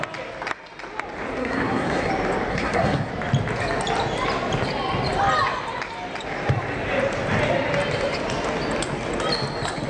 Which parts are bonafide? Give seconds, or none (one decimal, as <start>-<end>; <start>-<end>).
0.0-1.4; 2.1-2.5; 3.1-9.9